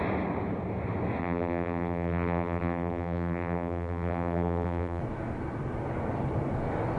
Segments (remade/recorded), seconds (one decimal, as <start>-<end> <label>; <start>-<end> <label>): 0.0-1.2 recorded; 1.2-5.0 remade; 5.0-7.0 recorded

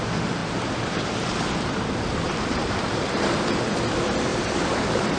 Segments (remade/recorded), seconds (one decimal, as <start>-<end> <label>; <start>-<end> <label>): 0.0-0.4 recorded; 0.4-3.5 remade; 3.5-4.3 recorded; 4.3-5.2 remade